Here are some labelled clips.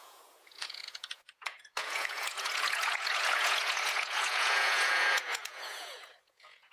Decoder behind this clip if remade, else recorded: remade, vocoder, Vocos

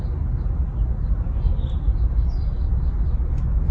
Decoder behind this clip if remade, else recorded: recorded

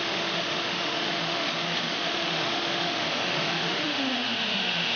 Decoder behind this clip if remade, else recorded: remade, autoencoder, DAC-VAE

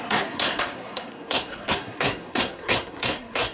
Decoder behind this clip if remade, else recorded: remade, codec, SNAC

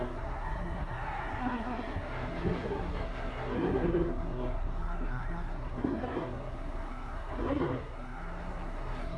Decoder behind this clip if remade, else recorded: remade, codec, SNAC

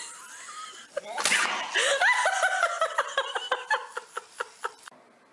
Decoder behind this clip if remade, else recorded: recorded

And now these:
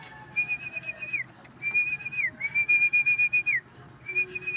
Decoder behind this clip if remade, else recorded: recorded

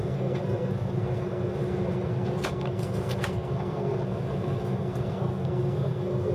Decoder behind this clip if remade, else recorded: remade, codec, SNAC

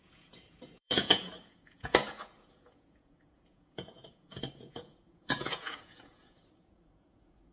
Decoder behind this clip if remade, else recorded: remade, vocoder, Vocos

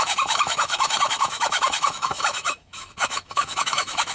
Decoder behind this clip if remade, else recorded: remade, autoencoder, DAC-VAE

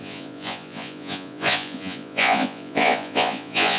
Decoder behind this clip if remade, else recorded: remade, vocoder, Vocos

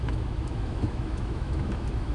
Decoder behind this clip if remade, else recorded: remade, autoencoder, DAC-VAE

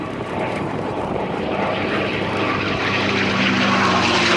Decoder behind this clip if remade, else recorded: remade, vocoder, BigVGAN v2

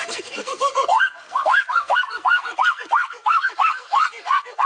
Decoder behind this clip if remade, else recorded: remade, codec, SNAC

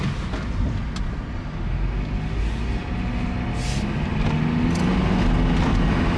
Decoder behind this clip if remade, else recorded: recorded